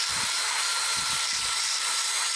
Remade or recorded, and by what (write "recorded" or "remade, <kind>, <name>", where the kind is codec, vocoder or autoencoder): remade, vocoder, BigVGAN v2